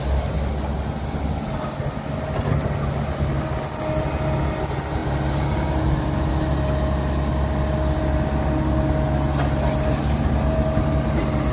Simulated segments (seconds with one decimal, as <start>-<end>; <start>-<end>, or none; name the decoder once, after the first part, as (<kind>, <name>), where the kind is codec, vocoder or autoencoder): none